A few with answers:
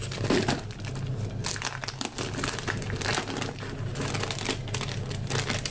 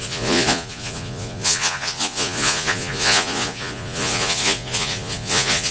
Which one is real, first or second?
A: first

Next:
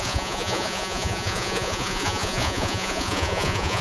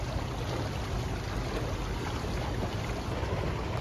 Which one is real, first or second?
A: second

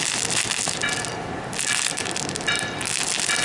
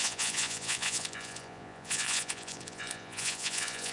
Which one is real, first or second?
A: first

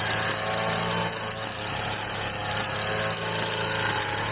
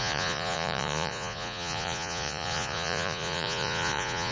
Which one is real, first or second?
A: first